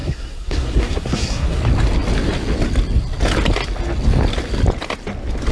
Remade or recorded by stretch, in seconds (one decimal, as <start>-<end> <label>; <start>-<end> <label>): 0.0-1.6 remade; 1.6-5.5 recorded